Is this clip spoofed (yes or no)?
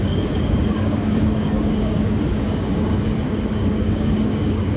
yes